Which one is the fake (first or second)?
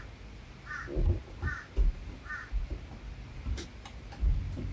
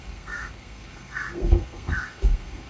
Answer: second